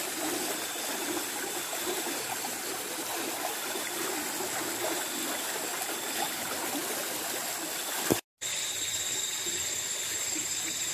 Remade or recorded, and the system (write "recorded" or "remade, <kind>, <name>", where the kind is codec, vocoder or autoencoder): recorded